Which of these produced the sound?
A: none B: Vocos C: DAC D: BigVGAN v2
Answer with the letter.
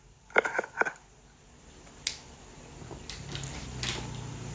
A